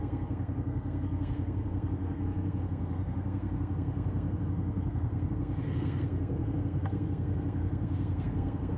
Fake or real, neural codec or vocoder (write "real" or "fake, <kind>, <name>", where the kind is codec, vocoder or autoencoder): fake, codec, SNAC